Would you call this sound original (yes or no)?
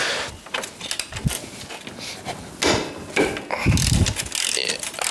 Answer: yes